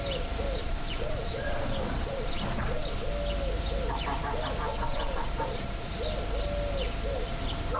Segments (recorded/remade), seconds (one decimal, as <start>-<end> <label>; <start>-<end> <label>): 0.0-0.6 recorded; 0.6-3.1 remade; 3.1-4.7 recorded; 4.7-5.9 remade; 5.9-7.8 recorded